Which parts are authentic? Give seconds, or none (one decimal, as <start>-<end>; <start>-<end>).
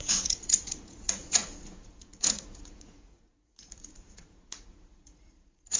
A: none